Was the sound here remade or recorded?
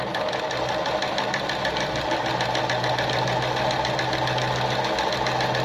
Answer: recorded